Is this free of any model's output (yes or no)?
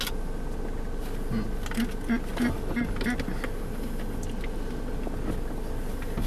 yes